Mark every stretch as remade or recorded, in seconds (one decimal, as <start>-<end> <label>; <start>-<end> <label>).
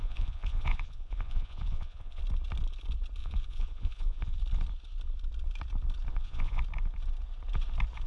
0.0-2.2 remade; 2.2-3.2 recorded; 3.2-4.4 remade; 4.4-6.1 recorded; 6.1-6.6 remade; 6.6-8.1 recorded